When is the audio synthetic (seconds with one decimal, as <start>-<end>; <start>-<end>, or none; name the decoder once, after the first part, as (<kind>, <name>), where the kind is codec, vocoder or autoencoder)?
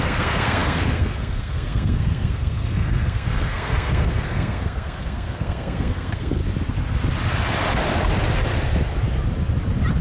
0.0-6.4 (codec, SNAC)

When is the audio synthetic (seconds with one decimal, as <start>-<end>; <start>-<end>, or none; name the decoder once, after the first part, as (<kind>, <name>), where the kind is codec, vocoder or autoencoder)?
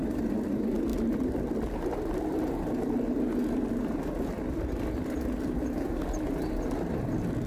none